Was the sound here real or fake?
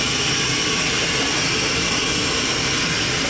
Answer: real